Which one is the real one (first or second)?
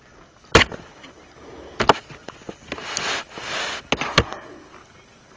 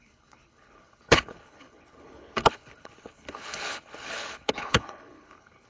first